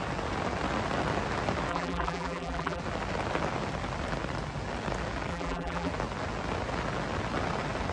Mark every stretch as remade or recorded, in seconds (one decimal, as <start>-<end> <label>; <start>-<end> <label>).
0.0-1.7 recorded; 1.7-2.8 remade; 2.8-5.3 recorded; 5.3-5.9 remade; 5.9-7.9 recorded

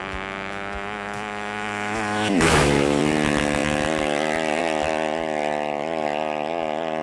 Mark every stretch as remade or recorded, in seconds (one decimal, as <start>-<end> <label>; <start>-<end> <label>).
0.0-3.0 remade; 3.0-7.0 recorded

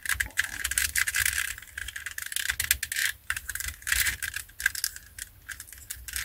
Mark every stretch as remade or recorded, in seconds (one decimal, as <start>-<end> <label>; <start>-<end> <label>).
0.0-1.3 remade; 1.3-1.8 recorded; 1.8-2.3 remade; 2.3-3.0 recorded; 3.0-4.3 remade; 4.3-6.2 recorded

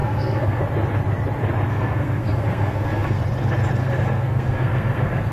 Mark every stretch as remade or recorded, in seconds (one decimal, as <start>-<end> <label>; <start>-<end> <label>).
0.0-0.6 remade; 0.6-1.7 recorded; 1.7-3.2 remade; 3.2-3.8 recorded; 3.8-5.3 remade

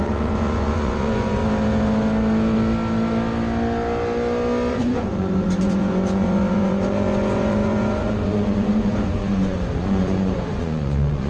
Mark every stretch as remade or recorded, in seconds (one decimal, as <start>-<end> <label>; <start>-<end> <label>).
0.0-1.4 remade; 1.4-4.7 recorded; 4.7-11.3 remade